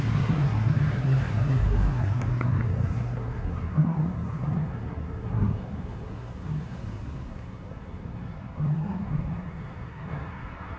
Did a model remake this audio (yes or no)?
yes